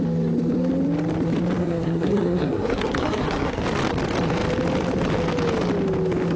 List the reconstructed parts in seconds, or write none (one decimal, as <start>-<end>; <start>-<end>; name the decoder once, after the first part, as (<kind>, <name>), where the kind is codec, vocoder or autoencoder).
1.6-3.6 (codec, SNAC)